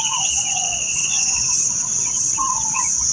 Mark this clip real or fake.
fake